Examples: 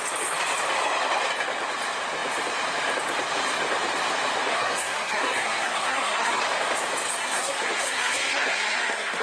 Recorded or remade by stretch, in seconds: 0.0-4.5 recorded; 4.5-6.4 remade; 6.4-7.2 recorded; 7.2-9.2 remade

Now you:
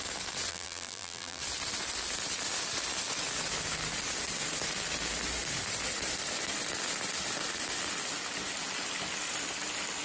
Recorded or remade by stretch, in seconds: 0.0-0.5 recorded; 0.5-1.4 remade; 1.4-10.0 recorded

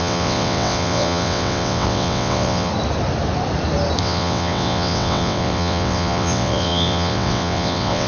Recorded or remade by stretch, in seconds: 0.0-2.7 remade; 2.7-4.0 recorded; 4.0-8.1 remade

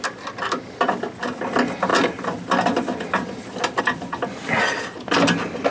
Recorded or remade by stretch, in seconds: 0.0-5.7 recorded

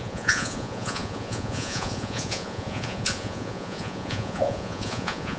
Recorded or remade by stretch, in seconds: 0.0-5.4 remade

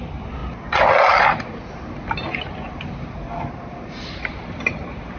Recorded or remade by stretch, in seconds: 0.0-5.2 recorded

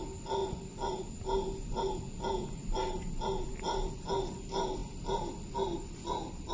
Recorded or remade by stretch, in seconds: 0.0-6.5 recorded